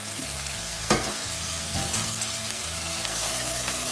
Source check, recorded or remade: remade